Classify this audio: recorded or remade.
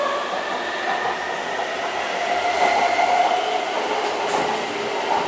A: recorded